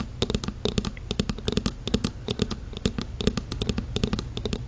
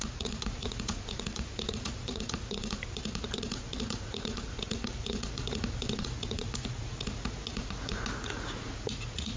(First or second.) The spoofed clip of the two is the second